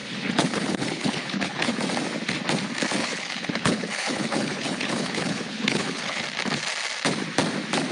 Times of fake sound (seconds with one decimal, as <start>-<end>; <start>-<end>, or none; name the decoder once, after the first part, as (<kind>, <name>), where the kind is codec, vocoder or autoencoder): 0.0-1.7 (codec, HILCodec); 3.0-6.2

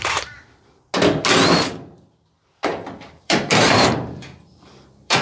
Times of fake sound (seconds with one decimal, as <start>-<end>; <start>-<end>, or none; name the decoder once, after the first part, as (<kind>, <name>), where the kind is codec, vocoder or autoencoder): 3.1-5.2 (vocoder, BigVGAN v2)

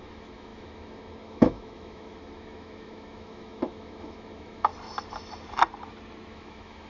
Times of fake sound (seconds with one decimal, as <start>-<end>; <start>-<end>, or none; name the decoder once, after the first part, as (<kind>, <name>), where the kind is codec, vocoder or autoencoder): 0.0-4.7 (autoencoder, DAC-VAE); 6.3-6.9

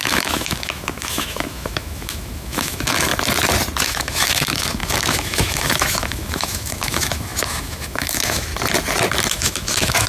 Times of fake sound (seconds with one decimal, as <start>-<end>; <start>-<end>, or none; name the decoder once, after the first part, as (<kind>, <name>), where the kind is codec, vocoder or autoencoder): 0.0-3.1 (autoencoder, DAC-VAE); 3.8-8.5; 9.3-10.1

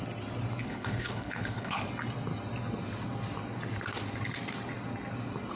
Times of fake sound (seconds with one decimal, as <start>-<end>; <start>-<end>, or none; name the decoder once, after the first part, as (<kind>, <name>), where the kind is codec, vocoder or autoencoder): 0.6-1.8 (codec, HILCodec)